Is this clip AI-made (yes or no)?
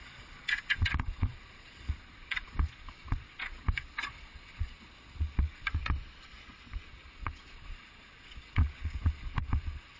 yes